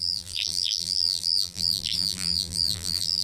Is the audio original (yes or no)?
no